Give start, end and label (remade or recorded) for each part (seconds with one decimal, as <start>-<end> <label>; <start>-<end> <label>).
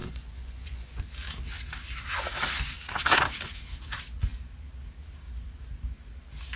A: 0.0-1.0 remade; 1.0-6.6 recorded